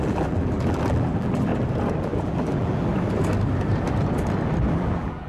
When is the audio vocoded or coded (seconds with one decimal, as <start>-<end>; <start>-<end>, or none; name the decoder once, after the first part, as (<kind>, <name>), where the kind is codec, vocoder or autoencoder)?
0.0-1.5 (vocoder, BigVGAN v2); 2.0-2.9; 4.7-5.3